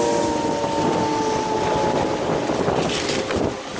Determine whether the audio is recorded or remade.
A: recorded